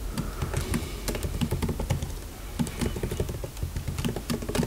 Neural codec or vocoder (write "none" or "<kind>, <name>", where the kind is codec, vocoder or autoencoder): none